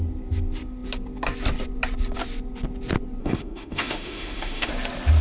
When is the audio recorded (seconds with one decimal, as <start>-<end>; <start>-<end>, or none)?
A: 0.0-3.2; 4.7-5.2